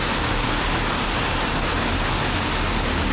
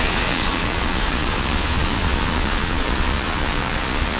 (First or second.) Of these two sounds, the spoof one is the second